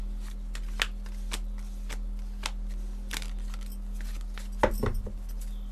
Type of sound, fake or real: real